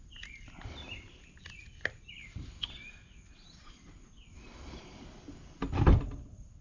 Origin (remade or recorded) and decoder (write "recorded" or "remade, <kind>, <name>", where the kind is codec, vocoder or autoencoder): recorded